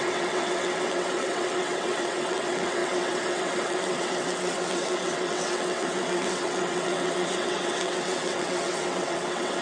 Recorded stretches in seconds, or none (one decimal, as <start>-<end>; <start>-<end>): none